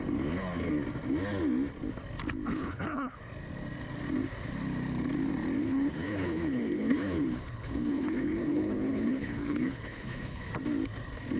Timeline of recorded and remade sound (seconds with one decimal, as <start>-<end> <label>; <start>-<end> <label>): 0.0-2.5 recorded; 2.5-3.2 remade; 3.2-5.6 recorded; 5.6-10.5 remade; 10.5-11.4 recorded